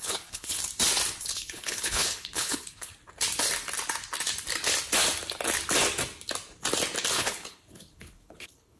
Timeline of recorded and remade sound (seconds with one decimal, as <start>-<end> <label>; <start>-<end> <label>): 0.0-0.6 remade; 0.6-1.2 recorded; 1.2-2.9 remade; 2.9-7.1 recorded; 7.1-8.8 remade